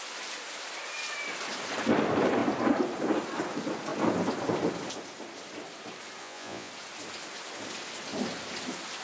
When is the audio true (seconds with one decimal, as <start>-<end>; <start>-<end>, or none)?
0.0-6.2; 6.7-9.0